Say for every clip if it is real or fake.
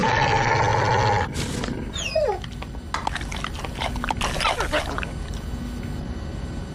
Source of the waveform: real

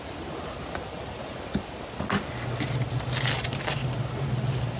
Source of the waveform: real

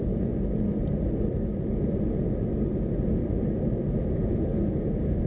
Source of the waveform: real